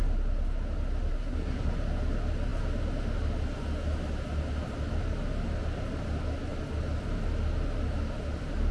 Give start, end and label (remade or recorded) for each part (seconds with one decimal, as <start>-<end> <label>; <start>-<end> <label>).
0.0-1.1 recorded; 1.1-1.7 remade; 1.7-8.7 recorded